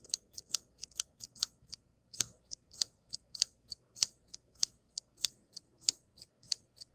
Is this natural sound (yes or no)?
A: no